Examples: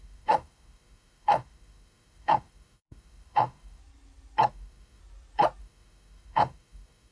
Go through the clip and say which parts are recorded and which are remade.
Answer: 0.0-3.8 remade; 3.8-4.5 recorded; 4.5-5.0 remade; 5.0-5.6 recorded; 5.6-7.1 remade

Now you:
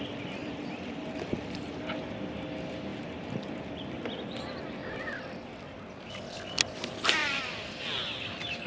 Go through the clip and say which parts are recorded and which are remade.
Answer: 0.0-0.4 recorded; 0.4-1.8 remade; 1.8-7.2 recorded; 7.2-8.7 remade

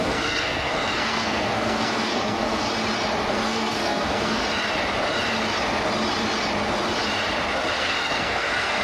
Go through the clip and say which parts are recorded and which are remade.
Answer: 0.0-2.7 remade; 2.7-3.3 recorded; 3.3-4.4 remade; 4.4-7.7 recorded; 7.7-8.8 remade

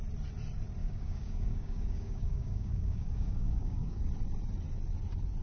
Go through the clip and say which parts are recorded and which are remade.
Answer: 0.0-0.8 recorded; 0.8-4.0 remade; 4.0-5.4 recorded

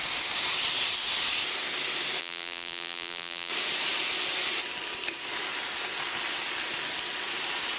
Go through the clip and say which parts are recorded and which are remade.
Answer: 0.0-2.2 recorded; 2.2-3.5 remade; 3.5-7.8 recorded

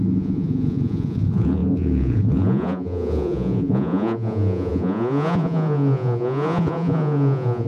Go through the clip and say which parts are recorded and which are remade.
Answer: 0.0-7.7 remade